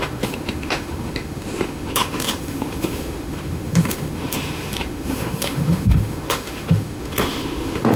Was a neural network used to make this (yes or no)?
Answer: yes